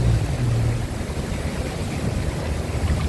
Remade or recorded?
recorded